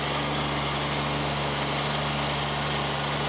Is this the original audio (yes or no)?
yes